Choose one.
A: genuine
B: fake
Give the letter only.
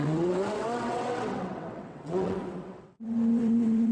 B